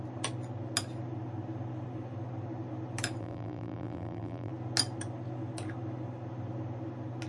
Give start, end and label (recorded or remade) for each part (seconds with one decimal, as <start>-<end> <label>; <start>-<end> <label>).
0.0-3.2 recorded; 3.2-4.5 remade; 4.5-7.3 recorded